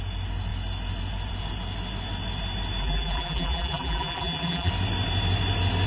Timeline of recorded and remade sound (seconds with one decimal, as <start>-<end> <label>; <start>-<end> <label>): 0.0-2.8 recorded; 2.8-4.7 remade; 4.7-5.9 recorded